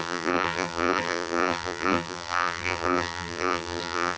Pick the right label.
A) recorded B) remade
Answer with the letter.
B